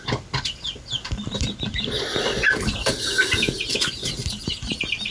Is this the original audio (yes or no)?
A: no